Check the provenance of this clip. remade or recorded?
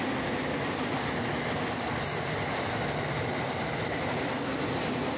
recorded